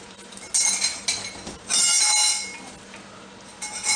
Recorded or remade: recorded